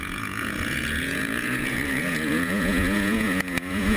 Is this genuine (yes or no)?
no